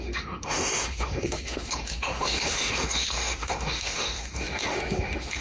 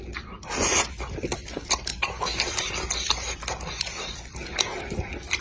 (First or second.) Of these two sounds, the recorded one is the second